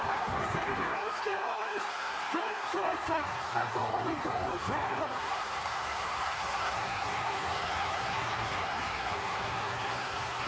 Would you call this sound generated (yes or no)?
yes